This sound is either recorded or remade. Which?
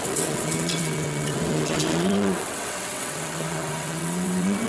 remade